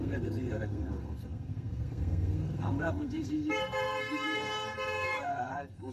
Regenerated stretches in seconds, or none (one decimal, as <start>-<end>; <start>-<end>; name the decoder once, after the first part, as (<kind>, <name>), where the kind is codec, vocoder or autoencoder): 0.0-5.9 (codec, SNAC)